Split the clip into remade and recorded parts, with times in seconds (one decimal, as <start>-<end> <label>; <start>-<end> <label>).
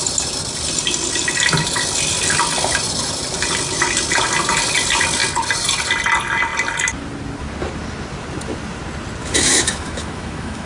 0.0-9.2 recorded; 9.2-10.7 remade